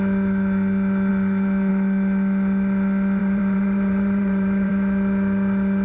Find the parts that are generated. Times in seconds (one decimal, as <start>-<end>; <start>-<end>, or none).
3.2-4.7